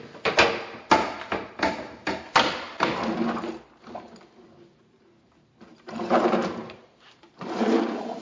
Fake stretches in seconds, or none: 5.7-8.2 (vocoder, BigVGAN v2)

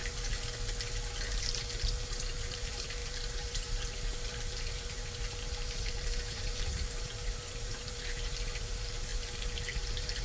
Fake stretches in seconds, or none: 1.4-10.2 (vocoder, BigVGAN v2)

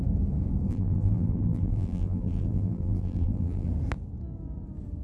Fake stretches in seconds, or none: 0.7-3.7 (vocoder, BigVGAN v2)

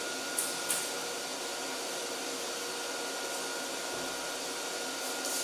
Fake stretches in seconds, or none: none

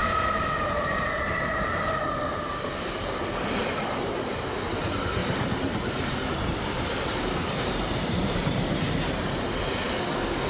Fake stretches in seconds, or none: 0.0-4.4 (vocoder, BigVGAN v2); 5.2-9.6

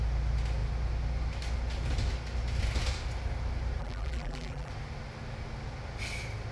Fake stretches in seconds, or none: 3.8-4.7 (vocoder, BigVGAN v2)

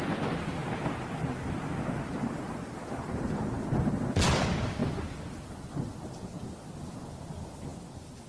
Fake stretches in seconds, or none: none